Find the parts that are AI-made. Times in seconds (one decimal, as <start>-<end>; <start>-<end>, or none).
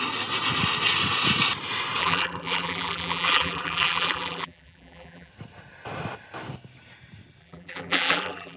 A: 2.0-5.3; 7.4-8.6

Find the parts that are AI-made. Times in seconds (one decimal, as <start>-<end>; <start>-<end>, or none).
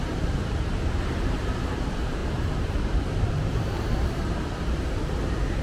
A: 0.0-5.6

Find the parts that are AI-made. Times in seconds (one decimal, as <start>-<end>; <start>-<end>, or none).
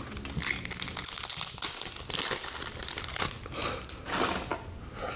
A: 3.6-4.1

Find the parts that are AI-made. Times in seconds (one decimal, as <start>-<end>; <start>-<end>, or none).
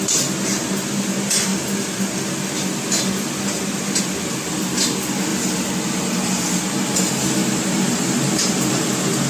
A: 7.4-8.8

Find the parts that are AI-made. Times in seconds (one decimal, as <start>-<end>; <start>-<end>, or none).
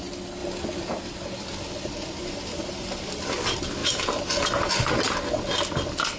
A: none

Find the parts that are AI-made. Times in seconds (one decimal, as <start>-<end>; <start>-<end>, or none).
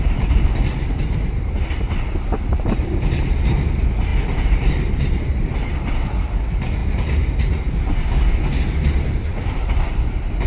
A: 4.1-4.7; 9.3-10.5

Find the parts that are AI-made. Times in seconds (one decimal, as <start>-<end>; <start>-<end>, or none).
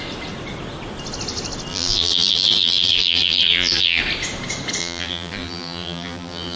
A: 1.7-4.0; 4.8-6.6